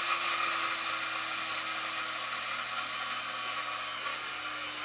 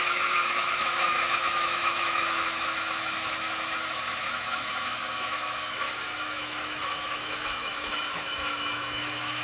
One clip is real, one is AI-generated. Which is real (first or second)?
first